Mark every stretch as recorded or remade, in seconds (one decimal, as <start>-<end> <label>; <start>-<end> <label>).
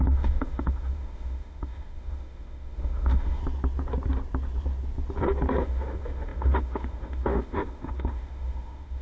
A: 0.0-3.4 remade; 3.4-5.6 recorded; 5.6-9.0 remade